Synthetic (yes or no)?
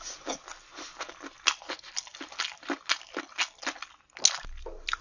no